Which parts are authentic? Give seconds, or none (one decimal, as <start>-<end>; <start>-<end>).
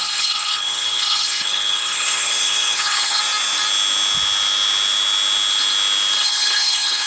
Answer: 3.2-6.2